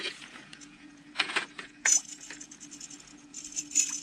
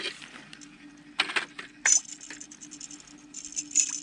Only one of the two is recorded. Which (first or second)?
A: second